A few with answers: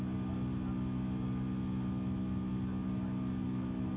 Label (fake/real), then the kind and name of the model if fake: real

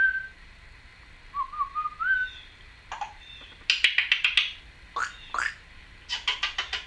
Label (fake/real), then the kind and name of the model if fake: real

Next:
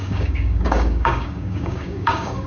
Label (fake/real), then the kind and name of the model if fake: fake, codec, DAC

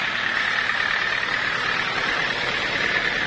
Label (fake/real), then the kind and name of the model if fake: real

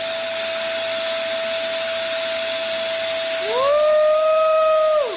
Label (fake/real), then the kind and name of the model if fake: real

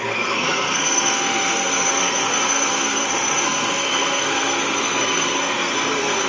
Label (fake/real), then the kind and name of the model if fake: fake, codec, SNAC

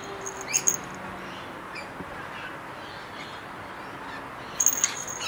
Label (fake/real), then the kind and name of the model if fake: real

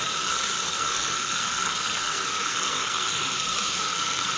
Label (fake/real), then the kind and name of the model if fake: fake, codec, SNAC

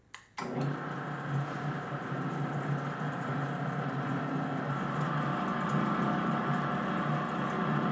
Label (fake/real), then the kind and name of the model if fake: real